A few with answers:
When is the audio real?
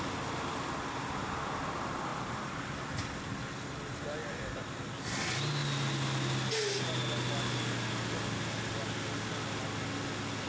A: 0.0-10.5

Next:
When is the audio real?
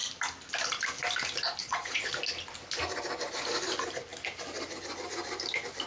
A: 0.0-1.6; 2.1-5.9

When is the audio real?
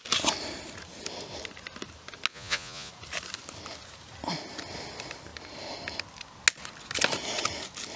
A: 0.0-2.3; 2.9-8.0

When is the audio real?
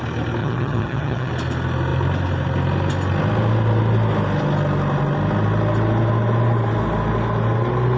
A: 0.0-0.4; 1.3-8.0